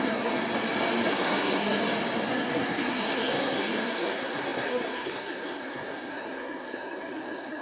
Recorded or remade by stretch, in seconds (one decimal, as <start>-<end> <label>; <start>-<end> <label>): 0.0-0.4 remade; 0.4-1.1 recorded; 1.1-1.8 remade; 1.8-2.3 recorded; 2.3-7.6 remade